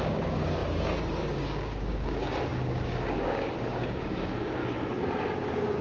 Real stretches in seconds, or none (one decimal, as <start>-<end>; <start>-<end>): 4.6-5.2